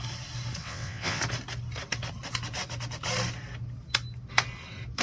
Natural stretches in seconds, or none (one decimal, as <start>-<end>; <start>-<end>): 0.0-0.6; 1.2-5.0